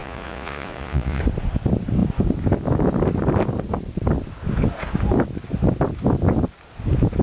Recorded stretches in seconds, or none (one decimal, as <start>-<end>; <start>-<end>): 1.2-7.2